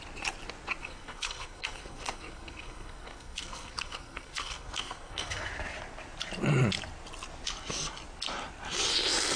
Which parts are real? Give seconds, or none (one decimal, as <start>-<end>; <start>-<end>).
0.0-0.8; 5.5-9.4